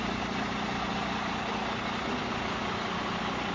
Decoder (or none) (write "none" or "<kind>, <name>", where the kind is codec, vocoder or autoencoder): none